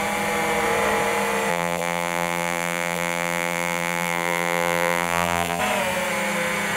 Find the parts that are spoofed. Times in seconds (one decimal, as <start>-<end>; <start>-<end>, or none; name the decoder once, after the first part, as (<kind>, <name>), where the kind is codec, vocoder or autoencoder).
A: 1.5-5.6 (vocoder, BigVGAN v2)